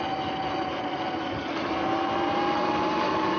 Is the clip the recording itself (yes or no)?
yes